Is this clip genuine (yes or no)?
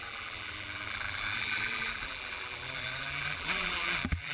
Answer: no